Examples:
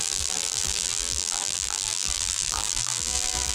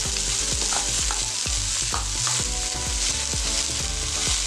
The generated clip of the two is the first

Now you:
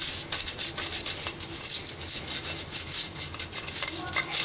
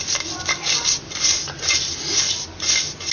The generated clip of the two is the second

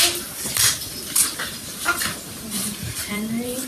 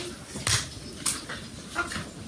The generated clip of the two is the first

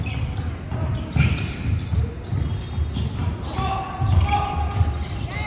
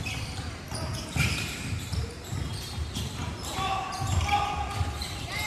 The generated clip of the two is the second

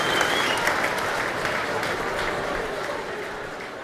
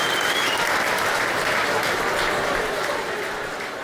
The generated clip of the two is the first